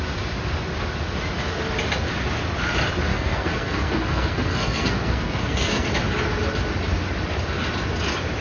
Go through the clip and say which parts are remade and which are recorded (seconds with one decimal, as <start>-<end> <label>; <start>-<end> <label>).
0.0-3.1 recorded; 3.1-5.9 remade; 5.9-8.4 recorded